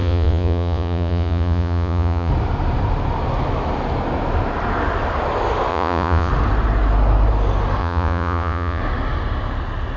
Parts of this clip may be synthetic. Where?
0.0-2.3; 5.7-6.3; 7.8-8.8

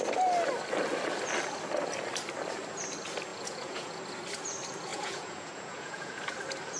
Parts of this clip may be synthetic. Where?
3.3-4.0; 4.9-6.2

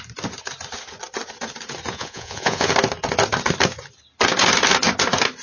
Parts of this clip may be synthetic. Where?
1.9-2.7

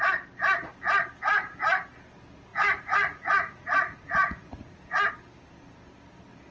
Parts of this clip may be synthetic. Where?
2.5-5.1

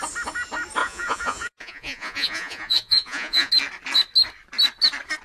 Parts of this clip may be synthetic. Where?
0.8-3.5

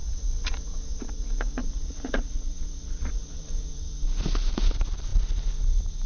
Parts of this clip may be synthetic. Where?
0.0-1.0; 1.6-3.9